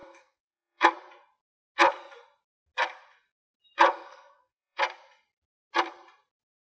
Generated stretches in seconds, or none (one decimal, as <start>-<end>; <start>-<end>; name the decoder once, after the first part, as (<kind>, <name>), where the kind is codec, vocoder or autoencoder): 0.0-0.9 (codec, SNAC); 3.9-4.8